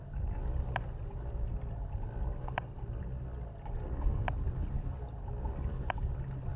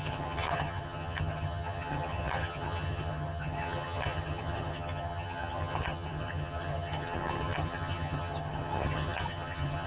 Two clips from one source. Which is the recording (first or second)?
first